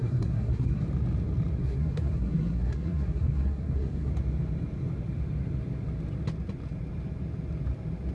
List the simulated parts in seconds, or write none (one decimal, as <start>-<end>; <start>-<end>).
0.0-0.8; 1.6-4.1